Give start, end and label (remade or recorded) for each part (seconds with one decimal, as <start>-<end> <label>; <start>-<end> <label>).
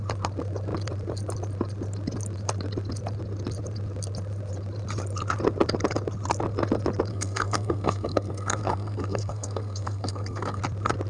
0.0-7.1 recorded; 7.1-10.6 remade; 10.6-11.1 recorded